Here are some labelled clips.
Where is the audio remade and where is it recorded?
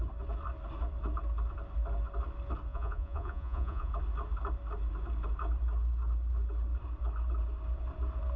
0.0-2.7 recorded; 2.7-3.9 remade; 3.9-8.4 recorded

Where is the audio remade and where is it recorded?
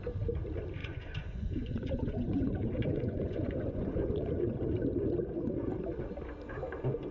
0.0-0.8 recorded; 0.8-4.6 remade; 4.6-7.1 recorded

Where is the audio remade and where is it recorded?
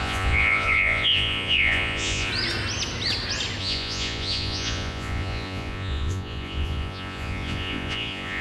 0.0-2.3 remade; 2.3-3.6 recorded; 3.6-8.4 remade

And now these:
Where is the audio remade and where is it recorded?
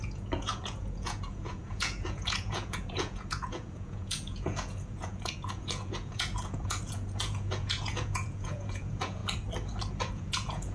0.0-9.2 remade; 9.2-9.9 recorded; 9.9-10.7 remade